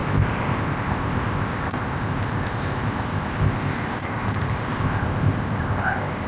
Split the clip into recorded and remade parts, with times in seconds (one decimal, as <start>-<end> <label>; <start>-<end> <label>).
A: 0.0-6.3 remade